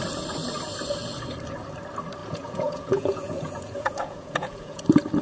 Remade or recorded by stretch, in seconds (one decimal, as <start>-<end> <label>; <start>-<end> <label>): 0.0-2.2 recorded; 2.2-4.8 remade; 4.8-5.2 recorded